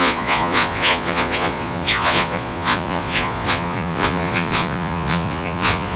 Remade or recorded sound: remade